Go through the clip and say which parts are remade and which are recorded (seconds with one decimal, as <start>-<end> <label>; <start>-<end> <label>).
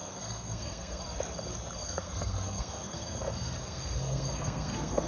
0.0-1.0 remade; 1.0-1.8 recorded; 1.8-5.1 remade